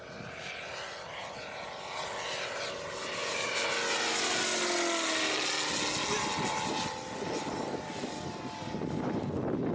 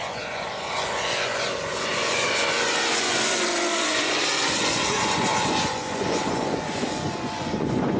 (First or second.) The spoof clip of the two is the second